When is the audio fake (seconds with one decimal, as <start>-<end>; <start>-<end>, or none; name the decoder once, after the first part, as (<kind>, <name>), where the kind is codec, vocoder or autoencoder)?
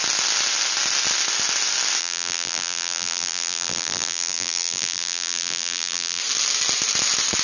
2.0-6.2 (vocoder, BigVGAN v2)